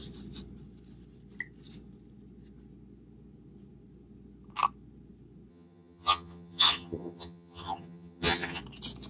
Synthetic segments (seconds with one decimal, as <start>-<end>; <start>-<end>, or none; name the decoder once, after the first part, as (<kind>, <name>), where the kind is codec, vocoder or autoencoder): 5.5-8.6 (vocoder, HiFi-GAN)